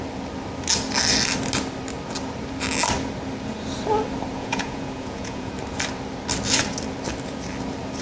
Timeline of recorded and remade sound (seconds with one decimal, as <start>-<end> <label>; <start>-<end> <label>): 0.0-4.3 recorded; 4.3-5.5 remade; 5.5-8.0 recorded